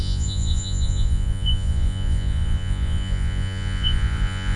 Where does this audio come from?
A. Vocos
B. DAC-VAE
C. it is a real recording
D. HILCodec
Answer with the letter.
A